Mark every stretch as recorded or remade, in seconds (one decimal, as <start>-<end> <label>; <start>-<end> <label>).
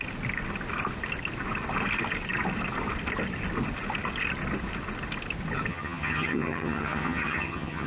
0.0-5.7 recorded; 5.7-7.9 remade